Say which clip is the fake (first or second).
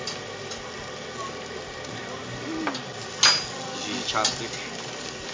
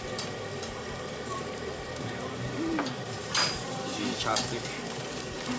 second